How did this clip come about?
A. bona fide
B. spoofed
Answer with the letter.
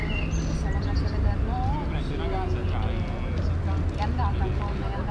A